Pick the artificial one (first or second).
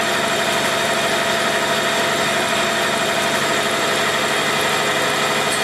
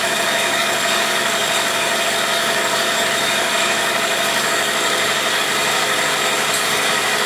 second